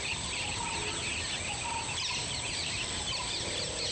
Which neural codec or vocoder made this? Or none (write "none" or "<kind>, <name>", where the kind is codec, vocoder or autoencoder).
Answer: none